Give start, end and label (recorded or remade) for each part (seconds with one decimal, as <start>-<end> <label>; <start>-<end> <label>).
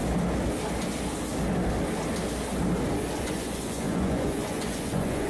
0.0-3.2 recorded; 3.2-5.3 remade